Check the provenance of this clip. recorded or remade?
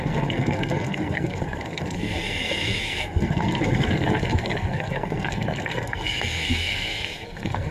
remade